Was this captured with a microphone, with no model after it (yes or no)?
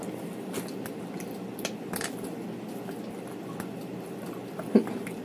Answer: yes